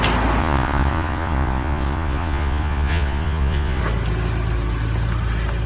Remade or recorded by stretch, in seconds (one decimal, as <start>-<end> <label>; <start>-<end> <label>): 0.0-0.4 recorded; 0.4-3.8 remade; 3.8-5.7 recorded